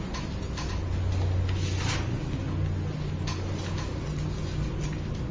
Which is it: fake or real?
real